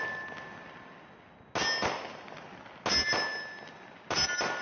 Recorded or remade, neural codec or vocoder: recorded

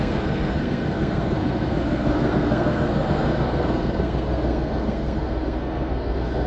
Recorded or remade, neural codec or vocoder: remade, codec, SNAC